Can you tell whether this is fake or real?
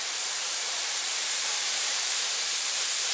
fake